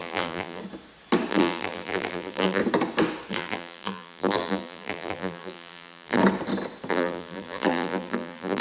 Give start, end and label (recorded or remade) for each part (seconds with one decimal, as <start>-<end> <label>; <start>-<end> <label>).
0.0-0.6 remade; 0.6-1.3 recorded; 1.3-2.6 remade; 2.6-3.3 recorded; 3.3-6.2 remade; 6.2-6.9 recorded; 6.9-8.6 remade